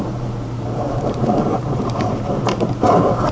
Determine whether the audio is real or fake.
fake